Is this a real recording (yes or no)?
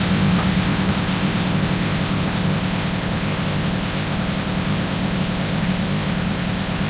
no